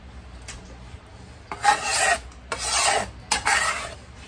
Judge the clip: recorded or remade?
recorded